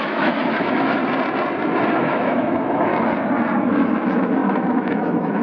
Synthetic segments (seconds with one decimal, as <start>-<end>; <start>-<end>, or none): 0.0-1.0; 2.0-2.9; 3.7-5.4